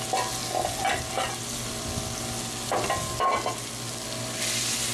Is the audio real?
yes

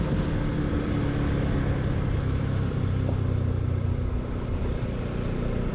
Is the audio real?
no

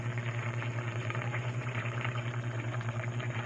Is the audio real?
no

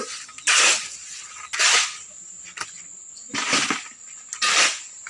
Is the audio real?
yes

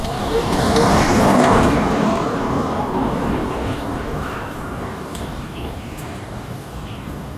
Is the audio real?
no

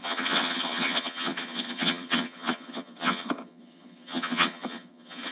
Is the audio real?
no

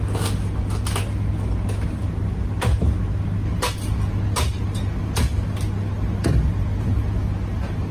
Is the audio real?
yes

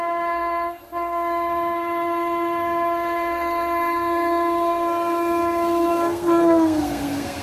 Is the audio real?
no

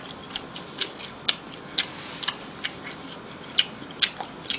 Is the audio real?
yes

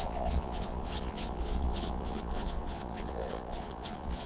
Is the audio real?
no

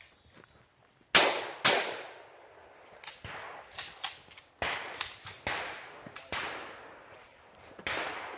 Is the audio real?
yes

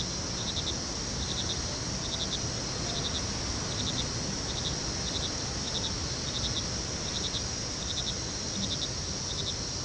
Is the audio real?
yes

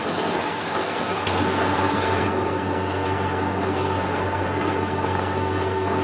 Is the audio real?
no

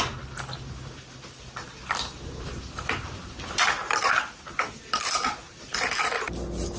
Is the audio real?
yes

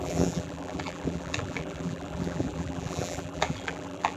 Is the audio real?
no